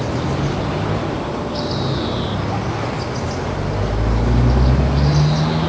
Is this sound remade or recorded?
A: recorded